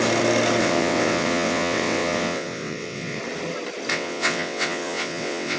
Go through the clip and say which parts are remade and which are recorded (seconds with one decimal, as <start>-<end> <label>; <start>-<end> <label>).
0.0-0.6 recorded; 0.6-3.2 remade; 3.2-3.9 recorded; 3.9-5.6 remade